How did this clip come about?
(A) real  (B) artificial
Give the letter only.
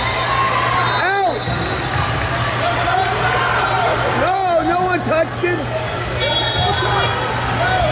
A